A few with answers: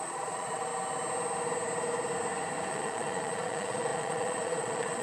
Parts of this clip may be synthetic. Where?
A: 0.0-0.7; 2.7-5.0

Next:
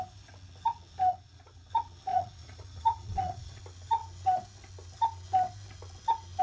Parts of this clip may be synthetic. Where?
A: 1.1-1.7; 2.1-3.6

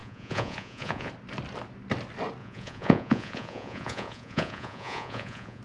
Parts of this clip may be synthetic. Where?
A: 0.0-1.1; 2.4-5.6

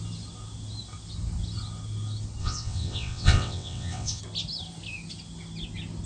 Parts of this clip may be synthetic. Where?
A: 2.4-4.2

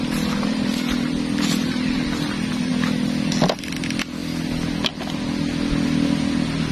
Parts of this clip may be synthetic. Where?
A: 0.0-2.7; 3.6-4.2